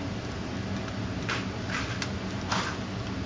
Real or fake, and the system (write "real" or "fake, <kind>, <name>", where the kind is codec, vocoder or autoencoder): real